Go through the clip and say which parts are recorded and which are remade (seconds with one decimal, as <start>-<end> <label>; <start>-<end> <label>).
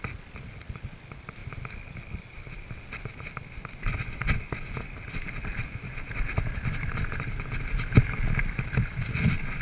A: 0.0-9.6 recorded